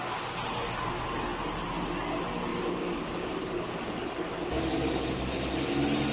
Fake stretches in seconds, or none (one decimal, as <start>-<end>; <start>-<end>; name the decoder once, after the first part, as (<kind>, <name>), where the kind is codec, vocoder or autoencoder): 2.5-5.2 (vocoder, BigVGAN v2)